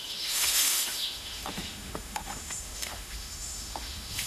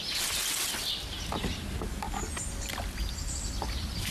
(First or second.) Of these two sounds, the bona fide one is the second